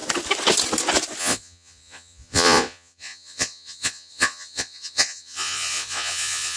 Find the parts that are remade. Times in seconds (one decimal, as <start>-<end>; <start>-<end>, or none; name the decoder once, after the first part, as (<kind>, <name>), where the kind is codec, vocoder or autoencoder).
1.2-6.6 (vocoder, Vocos)